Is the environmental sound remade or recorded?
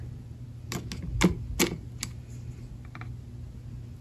recorded